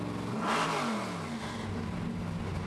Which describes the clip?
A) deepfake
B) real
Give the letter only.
B